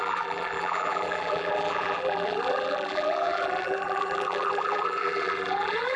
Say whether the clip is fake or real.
fake